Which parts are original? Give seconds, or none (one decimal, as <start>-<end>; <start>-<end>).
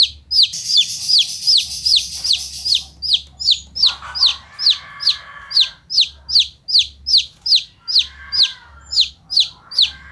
0.0-0.5; 2.3-8.5; 9.1-10.1